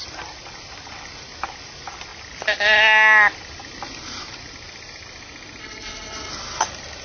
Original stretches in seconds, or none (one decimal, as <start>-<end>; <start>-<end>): 0.0-5.6; 6.3-7.0